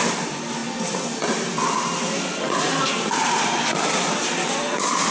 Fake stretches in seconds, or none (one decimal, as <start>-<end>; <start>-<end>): none